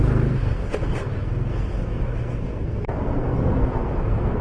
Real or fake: fake